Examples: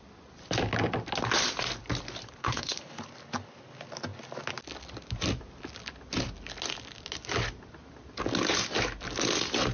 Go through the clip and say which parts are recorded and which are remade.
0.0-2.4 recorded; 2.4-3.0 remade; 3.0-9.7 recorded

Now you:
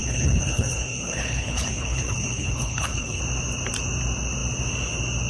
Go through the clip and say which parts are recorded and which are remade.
0.0-3.2 remade; 3.2-5.3 recorded

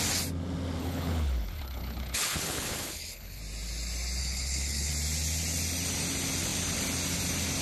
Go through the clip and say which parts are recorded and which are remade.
0.0-0.8 recorded; 0.8-3.4 remade; 3.4-4.2 recorded; 4.2-4.9 remade; 4.9-7.6 recorded

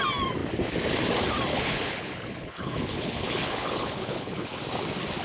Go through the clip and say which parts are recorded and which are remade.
0.0-1.5 recorded; 1.5-4.6 remade; 4.6-5.2 recorded

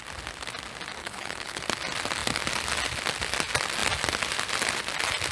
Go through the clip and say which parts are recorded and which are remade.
0.0-1.0 recorded; 1.0-1.6 remade; 1.6-5.3 recorded

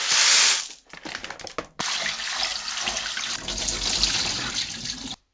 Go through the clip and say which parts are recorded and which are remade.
0.0-5.3 recorded

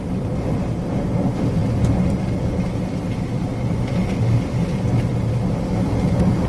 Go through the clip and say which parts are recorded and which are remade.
0.0-6.5 recorded